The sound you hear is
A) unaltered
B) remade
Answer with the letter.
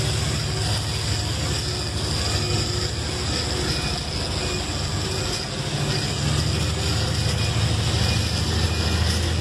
A